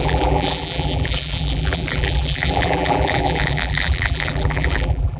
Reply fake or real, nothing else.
fake